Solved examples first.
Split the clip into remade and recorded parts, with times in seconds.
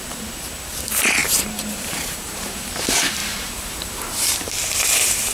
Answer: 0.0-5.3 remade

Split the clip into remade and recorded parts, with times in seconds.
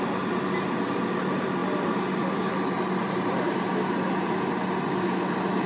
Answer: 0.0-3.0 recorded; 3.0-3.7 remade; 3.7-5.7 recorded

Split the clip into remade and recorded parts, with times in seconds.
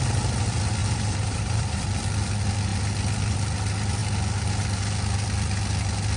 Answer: 0.0-0.8 recorded; 0.8-1.8 remade; 1.8-6.2 recorded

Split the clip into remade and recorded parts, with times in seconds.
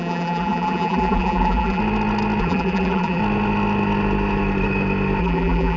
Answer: 0.0-1.8 remade; 1.8-2.4 recorded; 2.4-3.2 remade; 3.2-5.2 recorded; 5.2-5.8 remade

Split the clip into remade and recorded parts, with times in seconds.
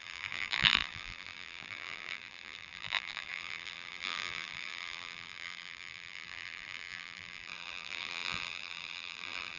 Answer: 0.0-9.6 remade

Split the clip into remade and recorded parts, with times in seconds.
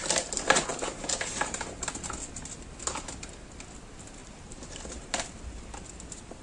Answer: 0.0-4.2 recorded; 4.2-5.3 remade; 5.3-6.4 recorded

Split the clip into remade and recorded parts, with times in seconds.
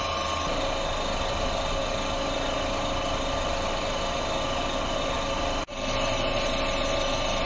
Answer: 0.0-7.5 recorded